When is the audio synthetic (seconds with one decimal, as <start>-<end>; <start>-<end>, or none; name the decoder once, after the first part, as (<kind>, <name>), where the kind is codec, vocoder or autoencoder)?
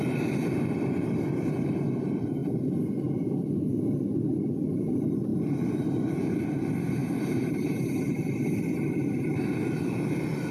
7.0-8.3 (vocoder, BigVGAN v2)